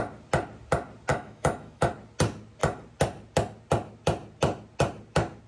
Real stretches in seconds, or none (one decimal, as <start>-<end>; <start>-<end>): 0.0-1.1; 1.9-5.5